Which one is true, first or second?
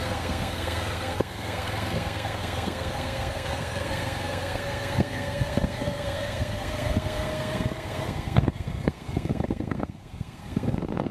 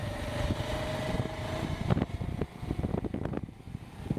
second